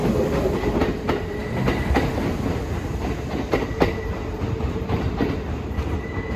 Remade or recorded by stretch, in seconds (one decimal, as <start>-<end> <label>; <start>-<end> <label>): 0.0-0.8 remade; 0.8-6.4 recorded